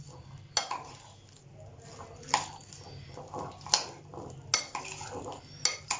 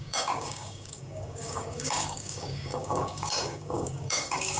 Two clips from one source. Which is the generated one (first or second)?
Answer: second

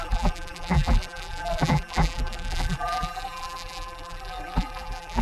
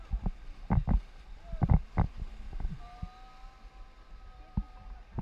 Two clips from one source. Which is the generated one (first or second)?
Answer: first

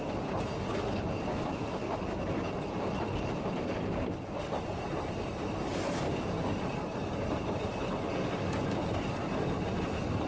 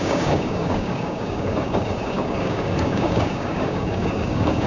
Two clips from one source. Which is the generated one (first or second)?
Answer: second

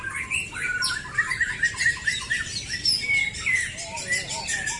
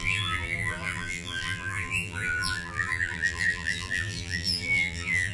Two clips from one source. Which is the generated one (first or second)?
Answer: second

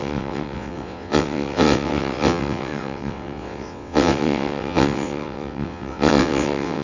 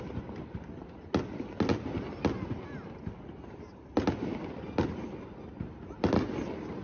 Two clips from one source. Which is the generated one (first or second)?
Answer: first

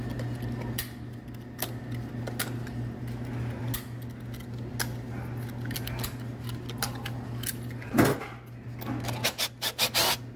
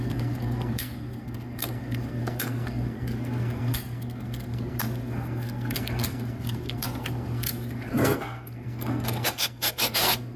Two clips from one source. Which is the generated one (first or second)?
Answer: second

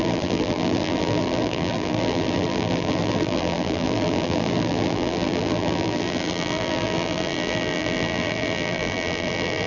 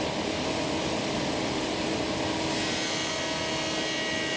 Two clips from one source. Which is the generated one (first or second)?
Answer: first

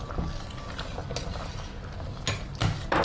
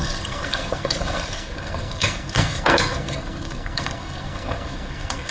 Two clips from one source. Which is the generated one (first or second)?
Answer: second